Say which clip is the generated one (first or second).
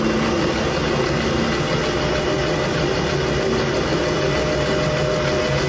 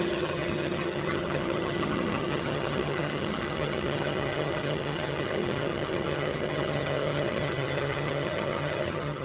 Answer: second